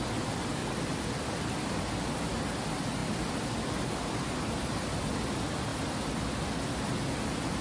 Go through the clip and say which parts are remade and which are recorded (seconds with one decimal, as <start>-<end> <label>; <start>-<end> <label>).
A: 0.0-0.6 recorded; 0.6-1.9 remade; 1.9-3.0 recorded; 3.0-4.2 remade; 4.2-7.6 recorded